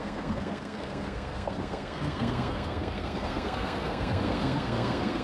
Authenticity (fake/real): fake